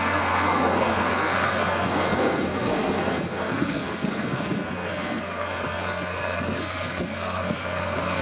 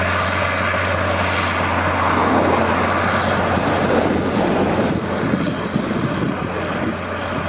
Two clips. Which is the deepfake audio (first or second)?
first